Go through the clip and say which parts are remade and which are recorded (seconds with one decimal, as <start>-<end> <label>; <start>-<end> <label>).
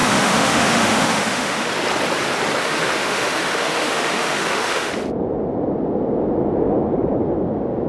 0.0-1.7 remade; 1.7-2.6 recorded; 2.6-4.9 remade; 4.9-7.9 recorded